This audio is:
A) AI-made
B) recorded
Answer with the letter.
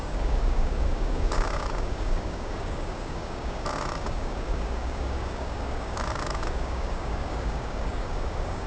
A